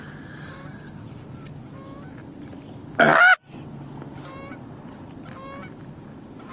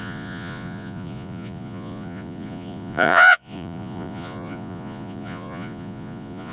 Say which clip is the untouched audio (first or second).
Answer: first